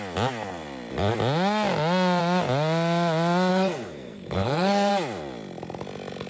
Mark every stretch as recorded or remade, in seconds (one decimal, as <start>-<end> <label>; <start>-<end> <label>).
0.0-3.5 recorded; 3.5-4.9 remade; 4.9-6.3 recorded